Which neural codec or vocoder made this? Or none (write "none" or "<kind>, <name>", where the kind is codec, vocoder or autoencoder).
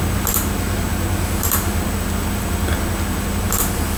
none